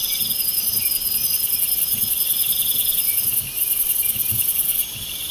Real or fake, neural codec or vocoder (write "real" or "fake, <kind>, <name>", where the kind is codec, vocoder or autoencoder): real